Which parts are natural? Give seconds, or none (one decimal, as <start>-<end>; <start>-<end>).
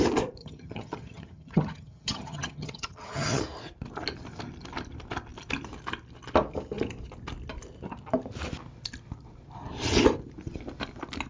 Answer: 0.0-0.4; 3.4-11.3